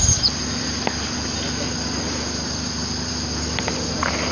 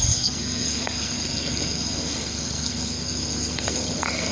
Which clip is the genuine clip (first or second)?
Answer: first